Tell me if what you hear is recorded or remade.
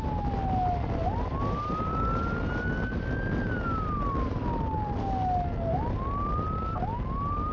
recorded